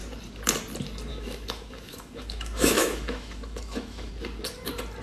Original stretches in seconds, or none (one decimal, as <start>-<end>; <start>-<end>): 0.0-1.1; 4.1-5.0